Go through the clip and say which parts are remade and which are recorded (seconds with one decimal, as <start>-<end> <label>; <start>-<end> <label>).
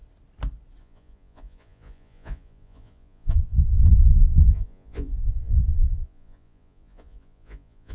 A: 0.0-0.8 recorded; 0.8-7.9 remade